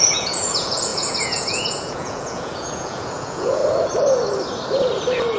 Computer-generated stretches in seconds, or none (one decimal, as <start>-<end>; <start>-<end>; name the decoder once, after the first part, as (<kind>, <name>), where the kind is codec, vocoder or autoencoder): 0.0-3.6 (vocoder, Vocos)